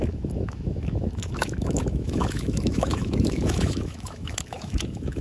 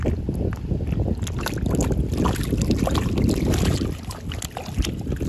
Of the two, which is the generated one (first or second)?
first